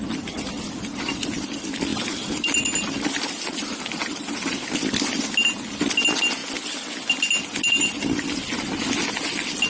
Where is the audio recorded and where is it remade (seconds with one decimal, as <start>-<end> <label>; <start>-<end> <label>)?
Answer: 0.0-9.7 recorded

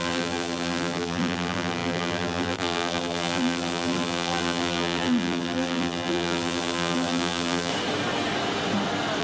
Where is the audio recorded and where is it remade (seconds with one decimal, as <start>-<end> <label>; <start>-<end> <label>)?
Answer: 0.0-7.7 remade; 7.7-9.2 recorded

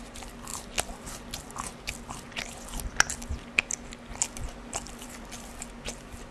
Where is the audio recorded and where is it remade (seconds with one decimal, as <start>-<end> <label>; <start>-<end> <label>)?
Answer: 0.0-0.5 recorded; 0.5-1.9 remade; 1.9-4.1 recorded; 4.1-5.6 remade; 5.6-6.3 recorded

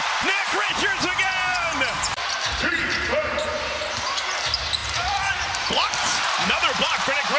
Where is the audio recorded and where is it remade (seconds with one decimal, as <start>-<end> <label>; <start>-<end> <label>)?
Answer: 0.0-1.5 recorded; 1.5-4.1 remade; 4.1-4.8 recorded; 4.8-7.4 remade

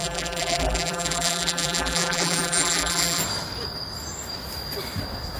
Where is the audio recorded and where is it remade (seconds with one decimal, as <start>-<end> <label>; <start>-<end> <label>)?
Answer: 0.0-3.2 remade; 3.2-5.4 recorded

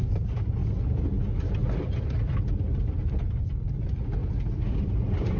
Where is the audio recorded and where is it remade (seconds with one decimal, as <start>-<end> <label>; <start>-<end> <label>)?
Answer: 0.0-0.6 remade; 0.6-3.6 recorded; 3.6-4.2 remade; 4.2-4.8 recorded; 4.8-5.4 remade